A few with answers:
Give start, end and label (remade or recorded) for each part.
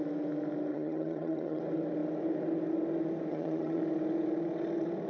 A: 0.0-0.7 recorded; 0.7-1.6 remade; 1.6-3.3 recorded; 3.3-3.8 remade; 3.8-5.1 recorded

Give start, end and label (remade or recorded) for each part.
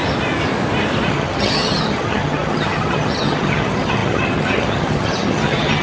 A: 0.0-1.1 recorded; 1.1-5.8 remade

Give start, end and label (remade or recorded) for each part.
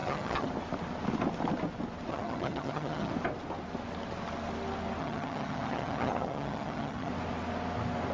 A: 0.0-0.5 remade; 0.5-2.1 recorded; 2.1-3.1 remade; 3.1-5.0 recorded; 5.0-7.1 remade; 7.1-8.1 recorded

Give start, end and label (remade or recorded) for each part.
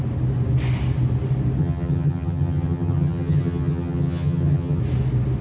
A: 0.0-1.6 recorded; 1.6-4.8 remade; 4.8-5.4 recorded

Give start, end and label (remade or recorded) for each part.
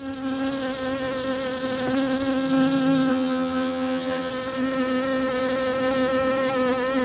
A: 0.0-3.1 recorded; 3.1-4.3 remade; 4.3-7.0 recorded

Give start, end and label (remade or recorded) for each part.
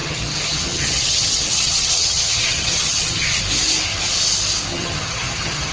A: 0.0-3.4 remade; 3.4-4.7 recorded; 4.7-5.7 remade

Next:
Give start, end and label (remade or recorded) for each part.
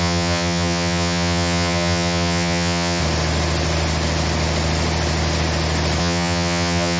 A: 0.0-3.0 remade; 3.0-6.0 recorded; 6.0-7.0 remade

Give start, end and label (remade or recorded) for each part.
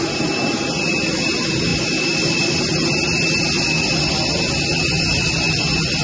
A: 0.0-6.0 recorded